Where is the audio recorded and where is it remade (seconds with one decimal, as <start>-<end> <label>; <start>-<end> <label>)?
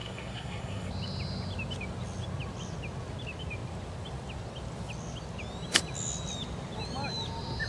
0.0-0.9 remade; 0.9-7.7 recorded